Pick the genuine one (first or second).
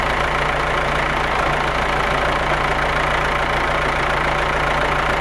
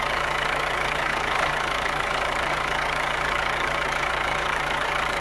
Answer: first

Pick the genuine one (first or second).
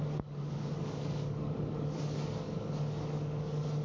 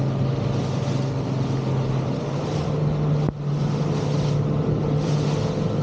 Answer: second